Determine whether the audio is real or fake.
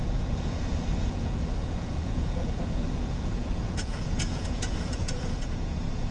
fake